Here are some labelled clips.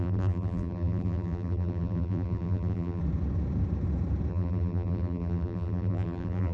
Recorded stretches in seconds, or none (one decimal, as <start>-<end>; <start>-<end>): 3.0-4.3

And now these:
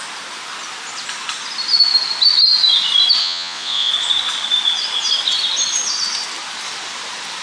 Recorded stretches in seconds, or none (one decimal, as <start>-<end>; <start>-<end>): 0.0-3.2; 3.9-7.4

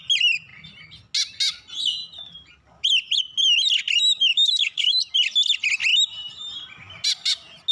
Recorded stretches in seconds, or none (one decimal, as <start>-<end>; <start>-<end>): 0.0-4.2; 5.0-7.7

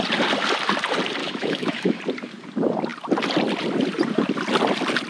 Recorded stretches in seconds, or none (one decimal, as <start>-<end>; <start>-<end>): 0.0-1.2; 2.0-5.1

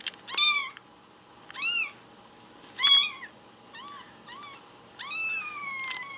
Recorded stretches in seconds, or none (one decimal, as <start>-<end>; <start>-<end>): 0.0-5.2

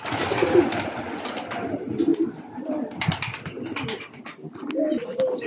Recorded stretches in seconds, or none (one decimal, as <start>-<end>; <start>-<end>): 0.0-5.5